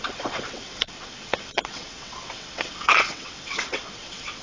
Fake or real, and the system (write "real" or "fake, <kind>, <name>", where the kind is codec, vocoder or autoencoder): fake, vocoder, WaveNeXt